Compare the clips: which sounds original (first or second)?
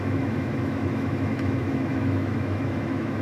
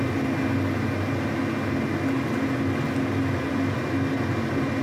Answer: second